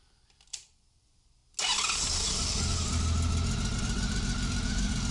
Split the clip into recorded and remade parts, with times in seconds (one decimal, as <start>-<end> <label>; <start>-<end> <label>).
0.0-1.4 remade; 1.4-3.8 recorded; 3.8-5.1 remade